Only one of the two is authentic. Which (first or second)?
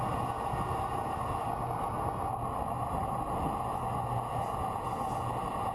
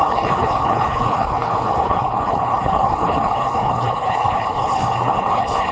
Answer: first